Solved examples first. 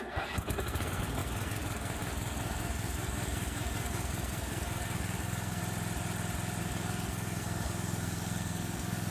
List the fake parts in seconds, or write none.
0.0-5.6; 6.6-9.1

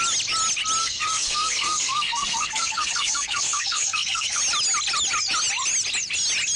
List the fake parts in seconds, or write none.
0.8-4.4

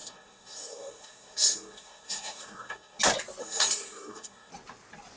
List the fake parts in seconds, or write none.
0.0-3.0; 3.4-4.5

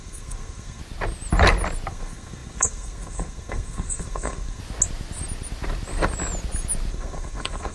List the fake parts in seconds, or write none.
0.0-0.8; 1.9-4.6; 6.9-7.7

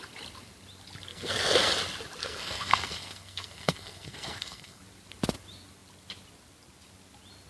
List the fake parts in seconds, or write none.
1.1-1.7; 2.2-4.8

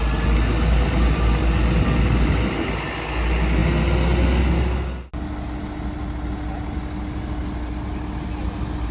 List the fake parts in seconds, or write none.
none

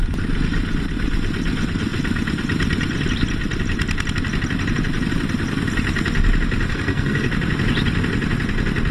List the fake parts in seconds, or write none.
6.7-7.3